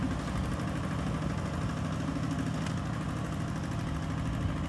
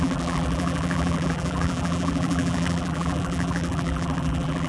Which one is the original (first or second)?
first